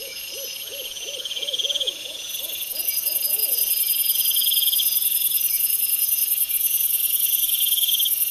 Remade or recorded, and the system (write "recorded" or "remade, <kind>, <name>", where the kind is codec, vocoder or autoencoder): remade, vocoder, Vocos